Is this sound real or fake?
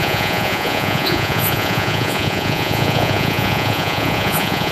fake